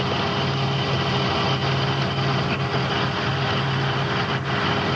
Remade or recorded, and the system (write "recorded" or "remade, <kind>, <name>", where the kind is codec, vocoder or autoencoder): recorded